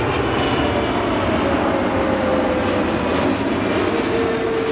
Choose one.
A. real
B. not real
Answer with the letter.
A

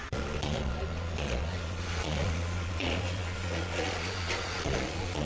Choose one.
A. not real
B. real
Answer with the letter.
A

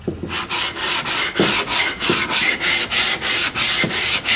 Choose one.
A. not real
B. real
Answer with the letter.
B